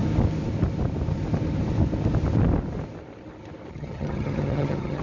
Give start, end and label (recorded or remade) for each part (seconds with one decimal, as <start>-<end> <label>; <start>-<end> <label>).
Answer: 0.0-3.7 recorded; 3.7-5.0 remade